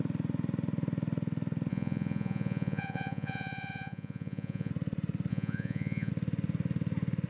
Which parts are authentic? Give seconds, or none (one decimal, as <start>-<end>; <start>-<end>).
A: 0.0-1.7; 4.7-5.3; 6.1-7.3